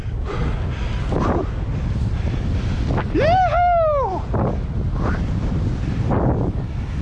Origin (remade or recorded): recorded